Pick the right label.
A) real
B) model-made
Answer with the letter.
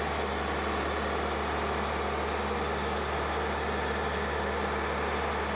A